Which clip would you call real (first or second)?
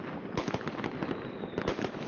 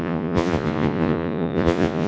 first